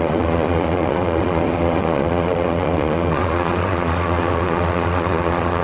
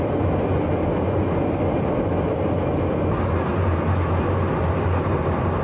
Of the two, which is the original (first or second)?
second